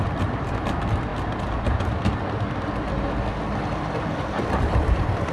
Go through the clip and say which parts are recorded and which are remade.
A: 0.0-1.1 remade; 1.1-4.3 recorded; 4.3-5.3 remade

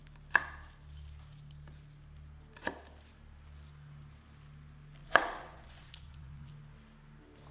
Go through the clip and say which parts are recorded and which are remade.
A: 0.0-5.0 recorded; 5.0-6.5 remade; 6.5-7.5 recorded

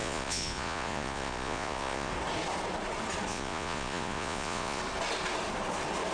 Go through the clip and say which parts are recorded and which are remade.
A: 0.0-2.1 remade; 2.1-3.3 recorded; 3.3-4.8 remade; 4.8-6.1 recorded

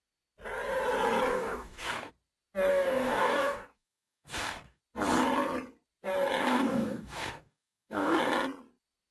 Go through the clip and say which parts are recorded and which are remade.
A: 0.0-1.3 recorded; 1.3-2.1 remade; 2.1-2.7 recorded; 2.7-4.8 remade; 4.8-6.4 recorded; 6.4-8.2 remade; 8.2-9.1 recorded